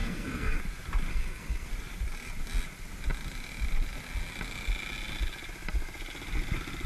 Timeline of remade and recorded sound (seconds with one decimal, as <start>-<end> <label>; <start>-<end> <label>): 0.0-0.6 remade; 0.6-1.1 recorded; 1.1-1.7 remade; 1.7-6.9 recorded